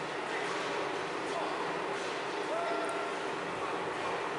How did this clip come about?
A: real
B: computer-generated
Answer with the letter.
A